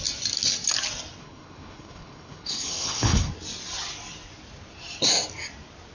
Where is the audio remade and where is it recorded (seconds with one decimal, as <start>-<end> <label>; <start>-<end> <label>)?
0.0-1.2 recorded; 1.2-3.3 remade; 3.3-5.9 recorded

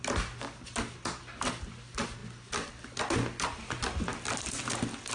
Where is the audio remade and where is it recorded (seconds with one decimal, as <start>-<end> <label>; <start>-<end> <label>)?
0.0-5.1 recorded

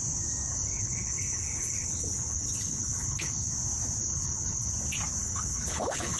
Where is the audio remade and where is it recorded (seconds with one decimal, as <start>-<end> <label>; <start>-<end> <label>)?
0.0-0.5 recorded; 0.5-3.5 remade; 3.5-4.0 recorded; 4.0-4.7 remade; 4.7-5.2 recorded; 5.2-6.2 remade

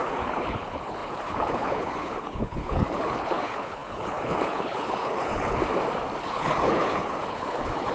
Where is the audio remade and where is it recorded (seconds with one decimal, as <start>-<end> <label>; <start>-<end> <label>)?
0.0-5.6 remade; 5.6-6.3 recorded; 6.3-7.9 remade